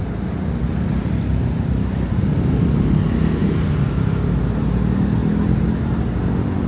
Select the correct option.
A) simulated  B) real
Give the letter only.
B